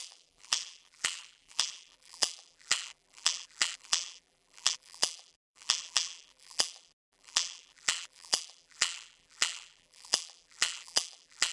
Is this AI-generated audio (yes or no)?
yes